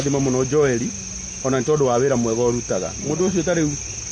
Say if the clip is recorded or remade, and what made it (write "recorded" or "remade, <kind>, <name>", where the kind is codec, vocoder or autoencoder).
recorded